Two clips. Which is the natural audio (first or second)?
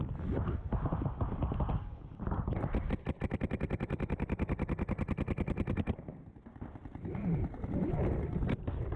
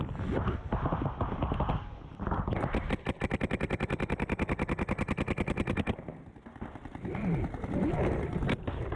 second